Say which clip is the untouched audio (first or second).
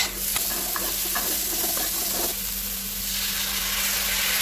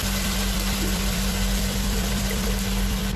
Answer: first